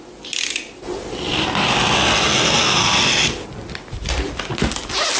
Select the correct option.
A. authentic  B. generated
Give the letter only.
A